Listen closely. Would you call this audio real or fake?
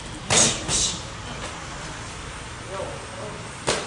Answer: real